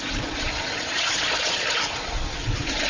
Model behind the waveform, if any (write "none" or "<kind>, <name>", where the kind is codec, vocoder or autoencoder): vocoder, Vocos